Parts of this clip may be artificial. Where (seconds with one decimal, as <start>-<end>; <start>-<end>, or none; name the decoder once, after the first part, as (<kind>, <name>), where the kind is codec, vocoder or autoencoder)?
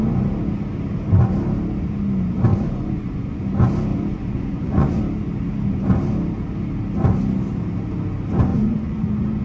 2.5-3.4 (vocoder, Vocos); 3.9-5.0; 8.5-9.4